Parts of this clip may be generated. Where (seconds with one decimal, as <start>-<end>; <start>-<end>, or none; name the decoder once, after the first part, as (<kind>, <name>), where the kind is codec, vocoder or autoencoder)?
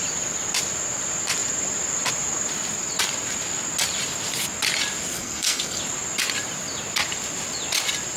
5.1-5.8 (codec, SNAC)